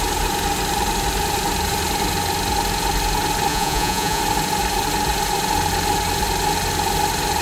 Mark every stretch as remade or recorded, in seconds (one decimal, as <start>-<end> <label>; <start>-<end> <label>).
0.0-3.5 recorded; 3.5-4.2 remade; 4.2-7.4 recorded